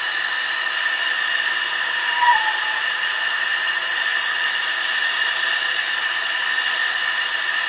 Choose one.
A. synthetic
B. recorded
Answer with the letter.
B